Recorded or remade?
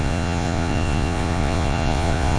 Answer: remade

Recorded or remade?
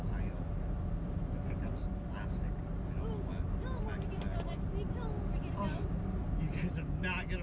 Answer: recorded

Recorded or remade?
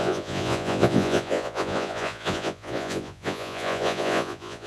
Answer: remade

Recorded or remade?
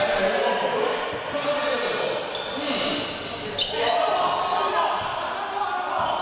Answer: recorded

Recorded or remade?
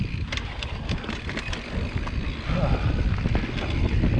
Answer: recorded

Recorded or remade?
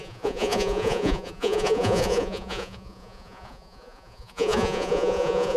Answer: remade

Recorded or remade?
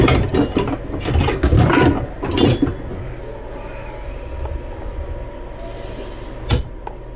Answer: recorded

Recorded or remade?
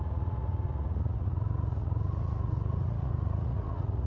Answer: remade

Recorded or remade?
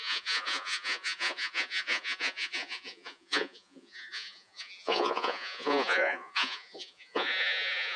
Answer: remade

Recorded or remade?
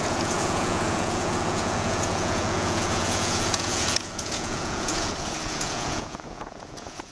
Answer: remade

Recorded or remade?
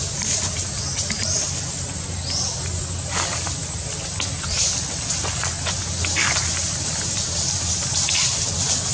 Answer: recorded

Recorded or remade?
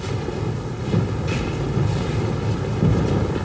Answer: recorded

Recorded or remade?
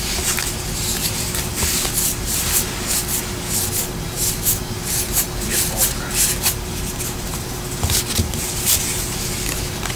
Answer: recorded